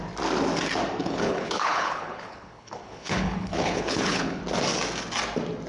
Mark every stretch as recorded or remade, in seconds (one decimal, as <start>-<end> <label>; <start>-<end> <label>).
0.0-1.0 recorded; 1.0-4.4 remade; 4.4-5.7 recorded